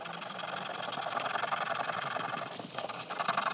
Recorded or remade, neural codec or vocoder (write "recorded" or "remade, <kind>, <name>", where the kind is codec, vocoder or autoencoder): remade, vocoder, BigVGAN v2